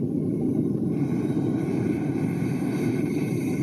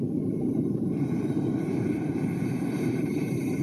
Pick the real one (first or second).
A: first